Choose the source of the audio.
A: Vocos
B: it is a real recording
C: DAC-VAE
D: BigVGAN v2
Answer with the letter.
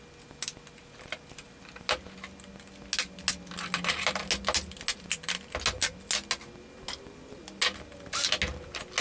B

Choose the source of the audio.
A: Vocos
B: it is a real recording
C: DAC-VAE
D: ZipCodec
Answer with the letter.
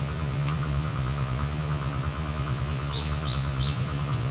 A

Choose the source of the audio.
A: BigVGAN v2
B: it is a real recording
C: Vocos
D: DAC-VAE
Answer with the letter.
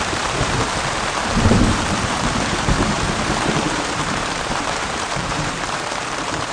A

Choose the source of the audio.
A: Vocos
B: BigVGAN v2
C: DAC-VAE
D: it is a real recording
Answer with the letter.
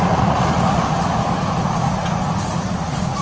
A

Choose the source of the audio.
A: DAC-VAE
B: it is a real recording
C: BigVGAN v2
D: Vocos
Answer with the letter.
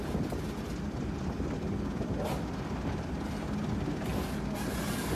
B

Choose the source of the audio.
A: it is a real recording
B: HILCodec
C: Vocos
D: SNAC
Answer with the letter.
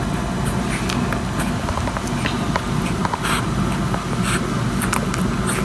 A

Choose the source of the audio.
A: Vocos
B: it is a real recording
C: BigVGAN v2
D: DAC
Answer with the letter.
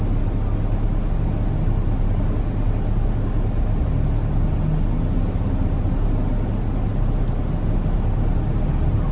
B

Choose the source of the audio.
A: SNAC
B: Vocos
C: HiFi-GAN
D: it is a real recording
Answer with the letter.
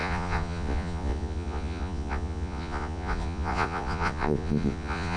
B